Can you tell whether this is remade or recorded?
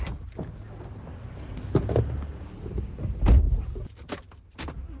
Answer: recorded